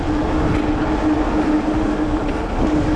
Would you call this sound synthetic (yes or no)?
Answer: no